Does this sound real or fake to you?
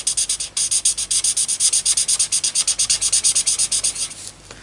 real